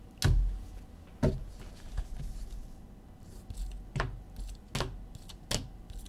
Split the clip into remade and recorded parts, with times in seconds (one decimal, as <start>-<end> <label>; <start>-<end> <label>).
0.0-6.1 recorded